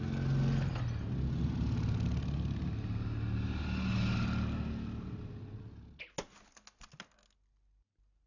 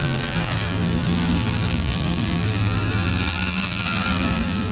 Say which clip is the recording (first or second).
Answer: first